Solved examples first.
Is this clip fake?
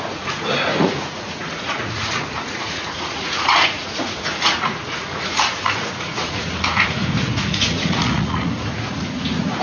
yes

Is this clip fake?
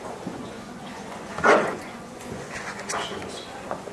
yes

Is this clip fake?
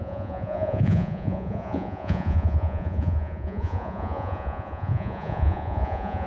yes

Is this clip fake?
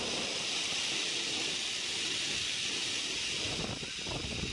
no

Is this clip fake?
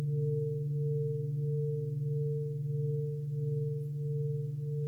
no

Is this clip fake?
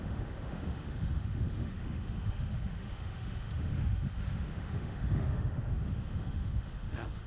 yes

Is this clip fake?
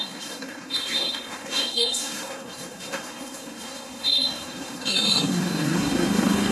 yes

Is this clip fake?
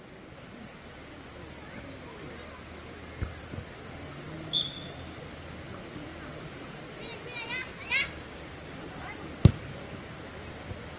no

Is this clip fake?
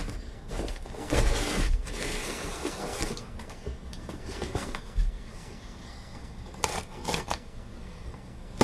yes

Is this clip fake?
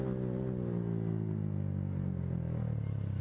no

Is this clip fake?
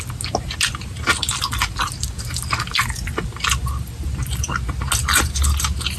no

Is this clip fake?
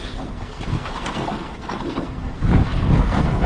yes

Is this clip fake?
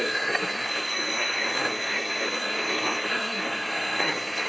yes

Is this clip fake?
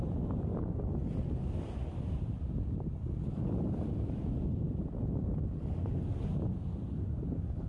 no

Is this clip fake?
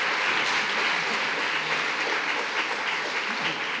no